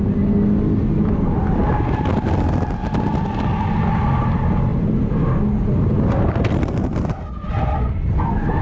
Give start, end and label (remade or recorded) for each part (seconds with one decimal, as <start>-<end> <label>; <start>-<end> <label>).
0.0-8.6 recorded